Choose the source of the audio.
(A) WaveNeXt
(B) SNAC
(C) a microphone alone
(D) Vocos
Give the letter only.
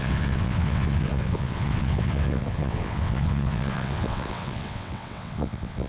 A